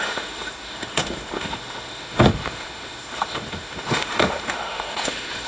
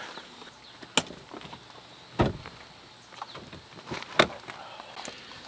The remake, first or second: first